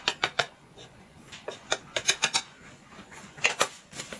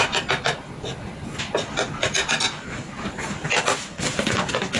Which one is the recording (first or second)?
second